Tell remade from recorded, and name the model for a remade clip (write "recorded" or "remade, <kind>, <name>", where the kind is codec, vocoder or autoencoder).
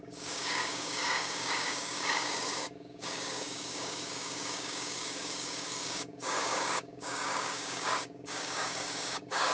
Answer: remade, codec, DAC